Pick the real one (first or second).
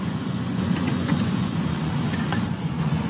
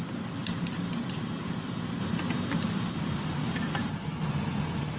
second